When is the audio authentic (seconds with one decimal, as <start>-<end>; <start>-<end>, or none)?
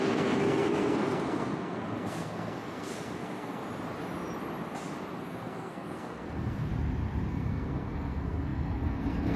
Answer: 3.6-5.2; 6.7-7.3